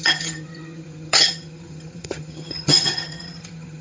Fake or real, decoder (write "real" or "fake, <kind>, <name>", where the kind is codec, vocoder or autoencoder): fake, vocoder, HiFi-GAN